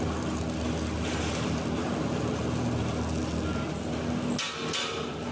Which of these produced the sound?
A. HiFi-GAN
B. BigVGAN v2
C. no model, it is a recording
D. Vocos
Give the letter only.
C